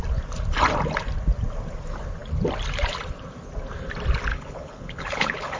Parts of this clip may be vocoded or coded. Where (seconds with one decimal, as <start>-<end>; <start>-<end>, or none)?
4.3-5.6